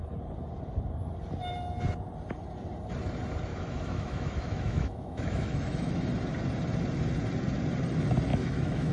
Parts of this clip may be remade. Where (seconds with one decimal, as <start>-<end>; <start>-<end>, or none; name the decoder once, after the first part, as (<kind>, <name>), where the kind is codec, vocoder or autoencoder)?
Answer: 3.5-6.1 (autoencoder, DAC-VAE); 8.3-8.9